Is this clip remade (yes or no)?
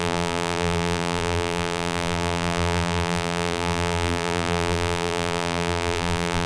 yes